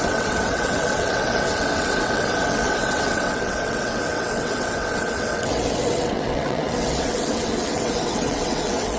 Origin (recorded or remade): remade